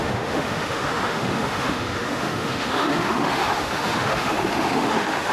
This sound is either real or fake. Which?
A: fake